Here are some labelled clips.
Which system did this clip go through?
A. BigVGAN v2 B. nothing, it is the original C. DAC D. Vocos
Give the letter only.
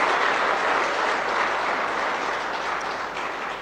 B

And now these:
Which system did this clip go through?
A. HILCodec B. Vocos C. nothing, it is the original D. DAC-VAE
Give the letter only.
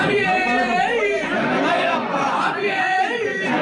B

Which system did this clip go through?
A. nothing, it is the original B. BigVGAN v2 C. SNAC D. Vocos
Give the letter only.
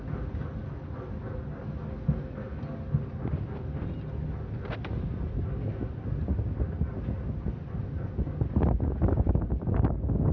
A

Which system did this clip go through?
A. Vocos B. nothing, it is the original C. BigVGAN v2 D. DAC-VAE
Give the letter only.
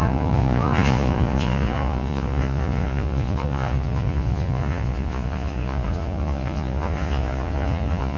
A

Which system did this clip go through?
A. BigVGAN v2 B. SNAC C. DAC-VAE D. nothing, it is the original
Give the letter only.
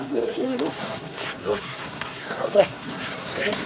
B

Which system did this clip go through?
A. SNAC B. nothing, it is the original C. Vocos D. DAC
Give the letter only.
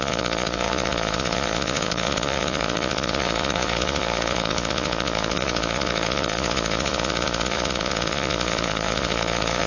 C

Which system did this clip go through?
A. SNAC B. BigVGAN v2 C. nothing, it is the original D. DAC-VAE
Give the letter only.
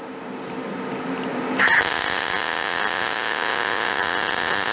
C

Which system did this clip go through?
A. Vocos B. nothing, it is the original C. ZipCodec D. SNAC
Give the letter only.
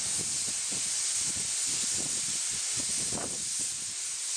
B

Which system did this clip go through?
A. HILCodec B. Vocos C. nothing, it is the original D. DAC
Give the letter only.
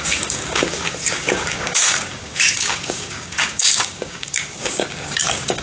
D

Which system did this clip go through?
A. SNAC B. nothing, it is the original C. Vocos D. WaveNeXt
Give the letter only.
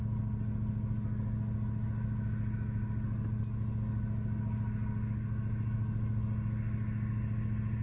B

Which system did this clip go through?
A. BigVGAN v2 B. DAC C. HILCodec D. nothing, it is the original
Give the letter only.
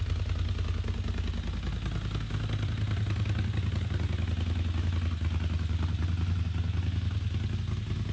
D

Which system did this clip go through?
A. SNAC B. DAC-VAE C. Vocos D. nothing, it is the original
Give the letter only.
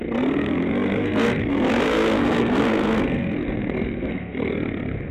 A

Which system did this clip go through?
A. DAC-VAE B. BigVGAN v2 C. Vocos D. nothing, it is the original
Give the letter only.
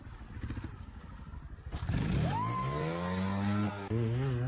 D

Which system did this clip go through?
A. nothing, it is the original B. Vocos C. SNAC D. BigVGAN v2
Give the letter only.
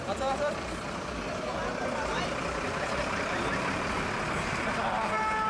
A